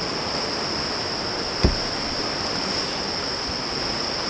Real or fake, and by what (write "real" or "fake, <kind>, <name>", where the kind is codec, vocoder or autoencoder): real